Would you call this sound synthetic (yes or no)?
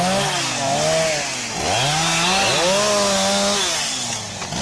no